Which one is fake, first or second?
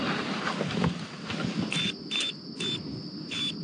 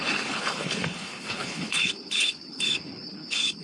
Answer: second